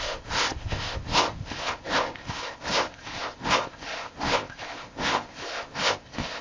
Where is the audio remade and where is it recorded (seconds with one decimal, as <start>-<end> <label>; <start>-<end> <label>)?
0.0-6.4 remade